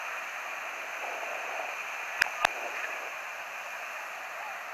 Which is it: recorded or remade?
recorded